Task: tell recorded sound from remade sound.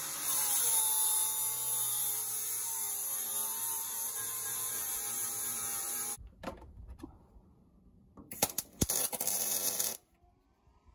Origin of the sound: remade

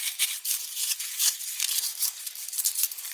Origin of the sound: remade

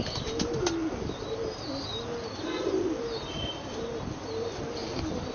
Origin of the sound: recorded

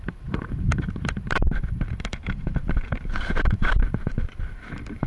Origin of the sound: remade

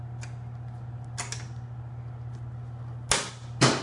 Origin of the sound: recorded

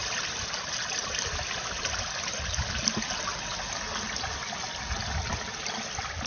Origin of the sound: recorded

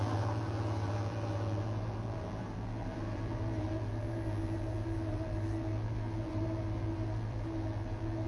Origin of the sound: remade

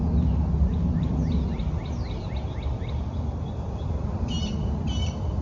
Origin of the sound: recorded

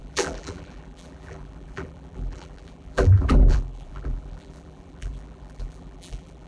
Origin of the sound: remade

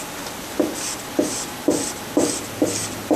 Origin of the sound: recorded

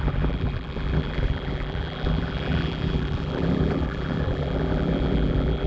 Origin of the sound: remade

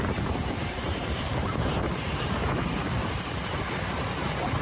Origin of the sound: remade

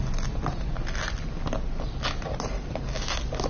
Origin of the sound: recorded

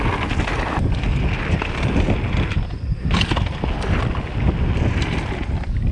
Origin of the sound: recorded